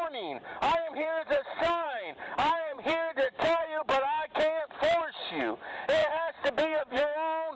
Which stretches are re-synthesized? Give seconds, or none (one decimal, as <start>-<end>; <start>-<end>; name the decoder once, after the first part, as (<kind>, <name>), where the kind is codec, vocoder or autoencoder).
0.5-3.8 (vocoder, BigVGAN v2); 6.0-7.0